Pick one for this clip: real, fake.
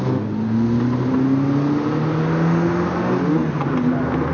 real